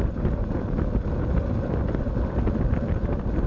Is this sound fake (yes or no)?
no